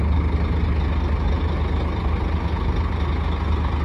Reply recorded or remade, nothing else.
recorded